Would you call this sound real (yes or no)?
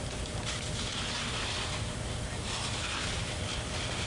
yes